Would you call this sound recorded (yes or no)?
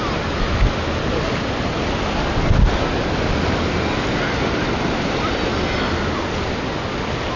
yes